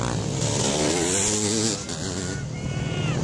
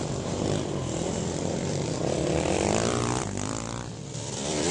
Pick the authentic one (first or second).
first